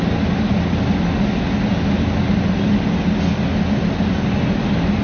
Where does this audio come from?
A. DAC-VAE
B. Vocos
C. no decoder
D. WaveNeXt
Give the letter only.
C